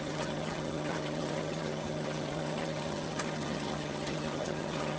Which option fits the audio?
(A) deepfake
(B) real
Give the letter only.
A